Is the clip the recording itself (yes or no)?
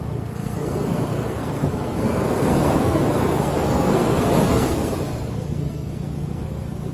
no